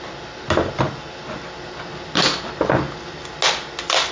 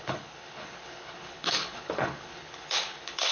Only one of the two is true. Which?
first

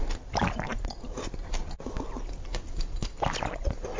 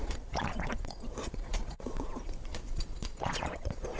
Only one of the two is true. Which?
first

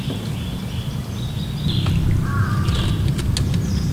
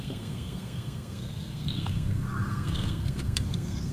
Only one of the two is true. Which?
first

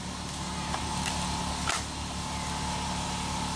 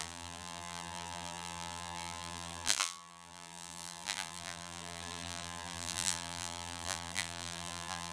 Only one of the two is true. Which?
first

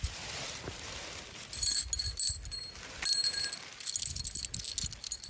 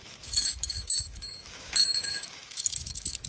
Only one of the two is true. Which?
first